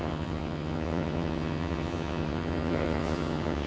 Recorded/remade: remade